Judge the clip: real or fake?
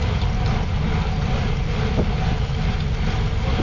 real